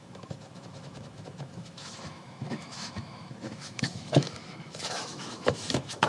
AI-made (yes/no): yes